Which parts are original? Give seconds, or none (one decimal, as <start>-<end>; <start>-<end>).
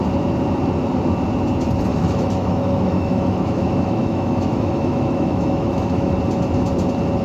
0.0-1.9; 6.2-7.2